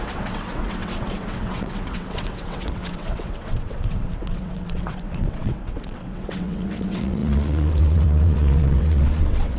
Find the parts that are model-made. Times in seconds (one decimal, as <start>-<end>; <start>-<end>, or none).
0.0-9.6